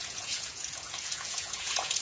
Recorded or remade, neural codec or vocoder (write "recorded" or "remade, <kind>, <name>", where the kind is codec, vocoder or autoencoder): remade, vocoder, Vocos